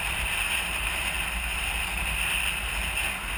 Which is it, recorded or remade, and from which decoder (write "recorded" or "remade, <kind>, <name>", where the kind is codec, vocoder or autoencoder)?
recorded